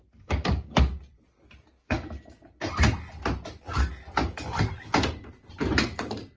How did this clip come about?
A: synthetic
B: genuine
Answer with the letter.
B